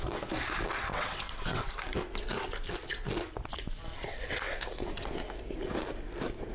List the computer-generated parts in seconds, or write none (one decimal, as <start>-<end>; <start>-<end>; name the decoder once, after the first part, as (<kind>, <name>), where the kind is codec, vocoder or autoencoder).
0.9-1.7 (vocoder, WaveNeXt)